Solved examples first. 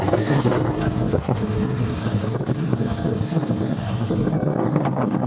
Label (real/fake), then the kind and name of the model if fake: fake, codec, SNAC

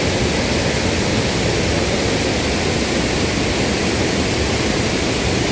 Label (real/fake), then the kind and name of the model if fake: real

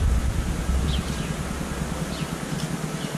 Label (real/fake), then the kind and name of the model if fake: real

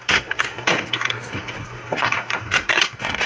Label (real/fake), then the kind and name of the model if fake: fake, codec, SNAC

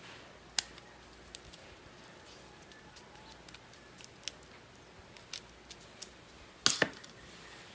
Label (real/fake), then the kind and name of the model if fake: real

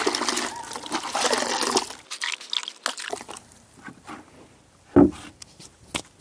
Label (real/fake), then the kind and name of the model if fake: real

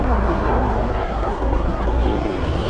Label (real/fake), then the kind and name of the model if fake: fake, codec, SNAC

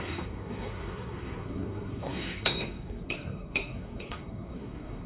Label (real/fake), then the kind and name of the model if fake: fake, codec, SNAC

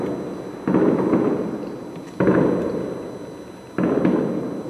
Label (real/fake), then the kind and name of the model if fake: real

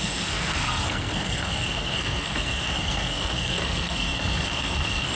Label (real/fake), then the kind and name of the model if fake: fake, codec, SNAC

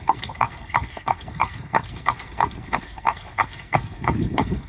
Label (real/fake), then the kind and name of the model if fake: fake, codec, SNAC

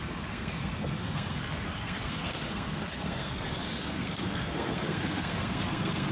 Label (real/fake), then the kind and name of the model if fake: fake, codec, SNAC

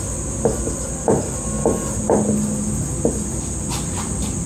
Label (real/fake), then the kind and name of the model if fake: real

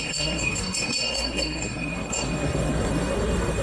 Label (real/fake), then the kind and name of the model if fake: fake, codec, SNAC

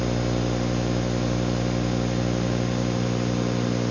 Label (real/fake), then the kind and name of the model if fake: real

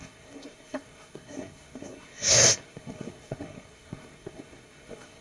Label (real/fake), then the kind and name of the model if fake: fake, codec, SNAC